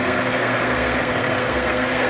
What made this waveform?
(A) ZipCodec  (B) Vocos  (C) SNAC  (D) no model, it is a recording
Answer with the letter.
C